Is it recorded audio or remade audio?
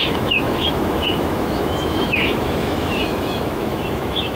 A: remade